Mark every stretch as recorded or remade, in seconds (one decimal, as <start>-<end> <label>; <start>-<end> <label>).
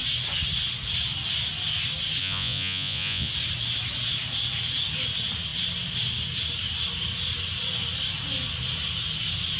0.0-2.2 recorded; 2.2-3.3 remade; 3.3-9.6 recorded